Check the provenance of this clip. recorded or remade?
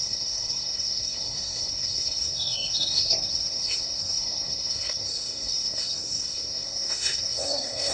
remade